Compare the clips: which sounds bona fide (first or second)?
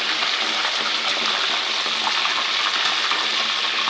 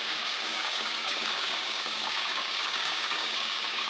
first